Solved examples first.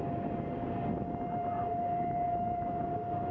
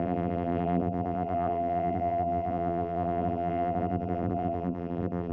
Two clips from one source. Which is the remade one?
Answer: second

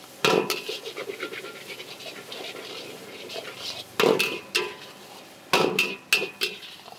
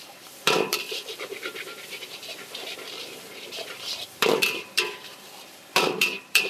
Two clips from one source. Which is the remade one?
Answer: second